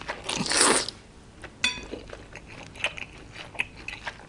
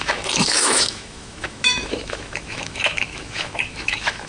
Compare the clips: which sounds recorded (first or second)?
first